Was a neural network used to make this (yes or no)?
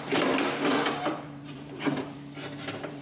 yes